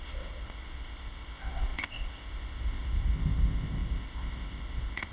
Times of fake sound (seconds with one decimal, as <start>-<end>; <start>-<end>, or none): 0.0-5.1